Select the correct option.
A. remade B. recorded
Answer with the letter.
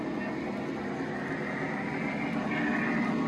B